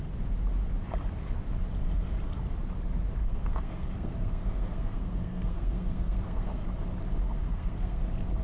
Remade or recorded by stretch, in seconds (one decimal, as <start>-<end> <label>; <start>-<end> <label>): 0.0-3.2 recorded; 3.2-6.6 remade; 6.6-7.1 recorded; 7.1-8.0 remade; 8.0-8.4 recorded